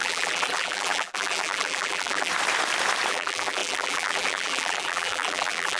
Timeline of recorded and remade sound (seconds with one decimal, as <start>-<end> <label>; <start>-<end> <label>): 0.0-2.3 remade; 2.3-3.1 recorded; 3.1-5.8 remade